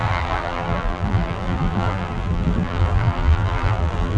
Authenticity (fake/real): fake